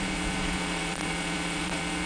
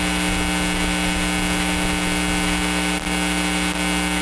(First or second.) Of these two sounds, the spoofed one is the first